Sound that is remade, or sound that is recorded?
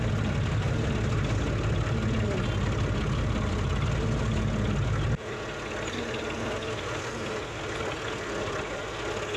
recorded